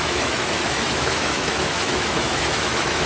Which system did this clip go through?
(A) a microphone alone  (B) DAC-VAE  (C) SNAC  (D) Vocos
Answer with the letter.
B